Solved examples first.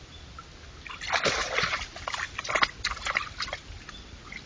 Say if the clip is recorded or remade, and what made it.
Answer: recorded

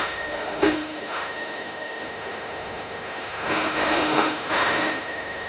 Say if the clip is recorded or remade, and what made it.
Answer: remade, autoencoder, DAC-VAE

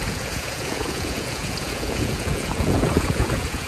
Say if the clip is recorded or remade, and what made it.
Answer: remade, vocoder, Vocos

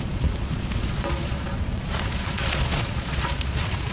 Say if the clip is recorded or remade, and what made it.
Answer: remade, vocoder, Vocos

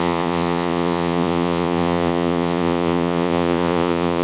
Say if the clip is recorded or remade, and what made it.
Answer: remade, vocoder, Vocos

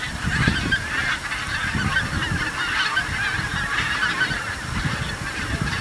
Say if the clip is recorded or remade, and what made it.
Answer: recorded